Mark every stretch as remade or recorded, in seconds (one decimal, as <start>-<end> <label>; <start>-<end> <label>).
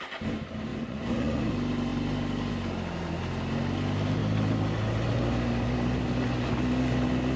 0.0-0.7 recorded; 0.7-1.5 remade; 1.5-7.4 recorded